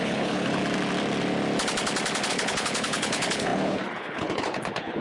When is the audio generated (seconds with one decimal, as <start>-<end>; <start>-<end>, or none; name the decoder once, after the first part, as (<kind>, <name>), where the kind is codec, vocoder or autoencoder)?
0.0-0.6 (codec, HILCodec); 2.3-5.0